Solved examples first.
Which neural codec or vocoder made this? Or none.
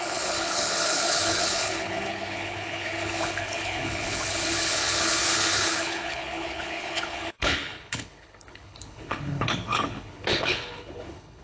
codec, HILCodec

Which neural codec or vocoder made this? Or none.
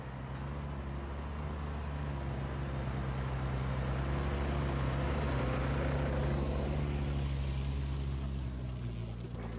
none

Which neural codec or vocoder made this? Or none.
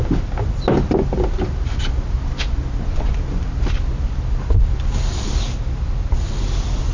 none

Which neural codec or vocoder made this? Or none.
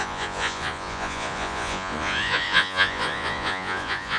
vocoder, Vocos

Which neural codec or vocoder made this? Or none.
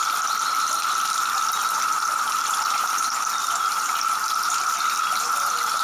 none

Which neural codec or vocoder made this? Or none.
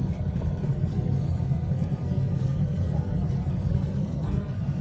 codec, SNAC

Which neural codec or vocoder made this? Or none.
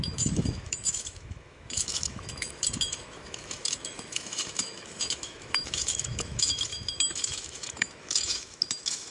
autoencoder, DAC-VAE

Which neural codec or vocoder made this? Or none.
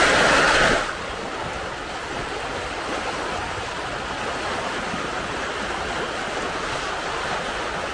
none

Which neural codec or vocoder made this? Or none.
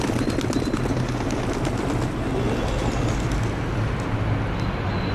none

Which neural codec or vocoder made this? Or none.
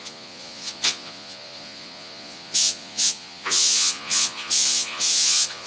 vocoder, Vocos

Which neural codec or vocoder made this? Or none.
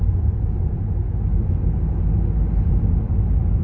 none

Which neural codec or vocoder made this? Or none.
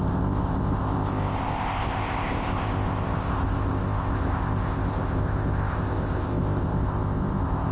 codec, ZipCodec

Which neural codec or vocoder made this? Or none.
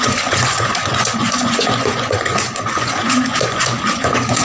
vocoder, Vocos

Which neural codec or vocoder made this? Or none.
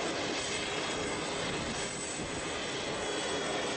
none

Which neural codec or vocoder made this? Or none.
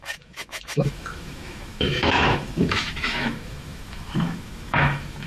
autoencoder, DAC-VAE